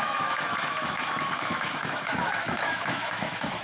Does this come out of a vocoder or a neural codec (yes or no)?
yes